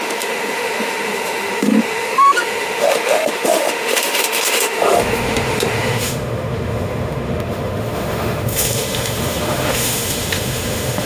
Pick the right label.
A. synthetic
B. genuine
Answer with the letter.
A